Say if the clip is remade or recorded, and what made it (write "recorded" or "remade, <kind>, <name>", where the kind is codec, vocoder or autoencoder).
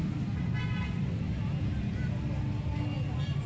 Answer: recorded